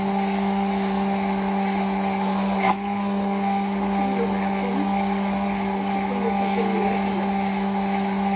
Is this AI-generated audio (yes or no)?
no